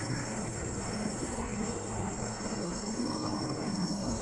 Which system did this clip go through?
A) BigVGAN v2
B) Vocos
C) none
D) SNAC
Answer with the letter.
D